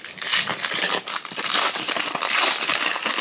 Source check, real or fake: real